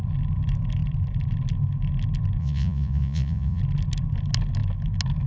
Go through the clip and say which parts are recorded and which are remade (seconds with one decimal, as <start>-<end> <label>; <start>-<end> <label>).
0.0-2.4 recorded; 2.4-3.6 remade; 3.6-5.3 recorded